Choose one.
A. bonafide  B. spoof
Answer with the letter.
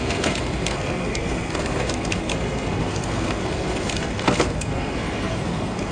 B